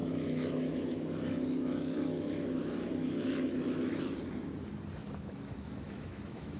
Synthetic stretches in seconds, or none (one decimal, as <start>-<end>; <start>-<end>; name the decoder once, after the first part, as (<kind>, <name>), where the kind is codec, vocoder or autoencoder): 0.0-4.0 (autoencoder, DAC-VAE); 5.0-6.6

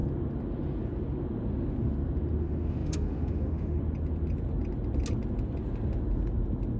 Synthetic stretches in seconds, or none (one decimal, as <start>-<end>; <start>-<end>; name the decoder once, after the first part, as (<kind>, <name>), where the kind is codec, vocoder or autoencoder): 2.4-3.8 (autoencoder, DAC-VAE)